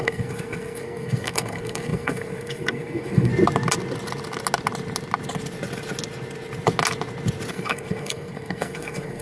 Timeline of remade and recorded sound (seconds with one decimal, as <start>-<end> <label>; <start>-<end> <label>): 0.0-3.3 remade; 3.3-7.5 recorded; 7.5-9.2 remade